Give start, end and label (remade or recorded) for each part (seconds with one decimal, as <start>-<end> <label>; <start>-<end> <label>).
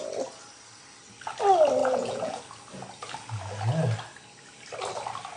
0.0-1.8 recorded; 1.8-2.4 remade; 2.4-5.4 recorded